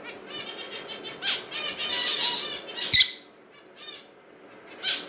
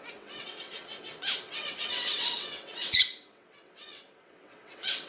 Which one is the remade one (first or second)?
second